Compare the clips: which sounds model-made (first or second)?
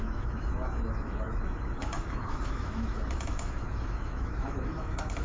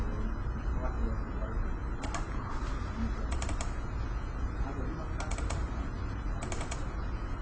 first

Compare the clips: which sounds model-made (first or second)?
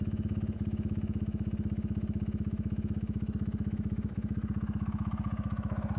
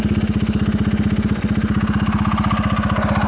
first